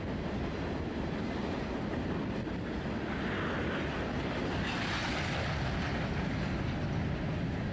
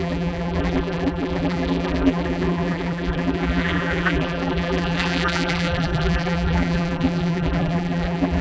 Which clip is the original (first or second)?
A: first